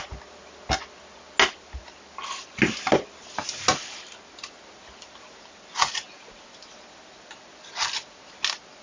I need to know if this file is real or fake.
real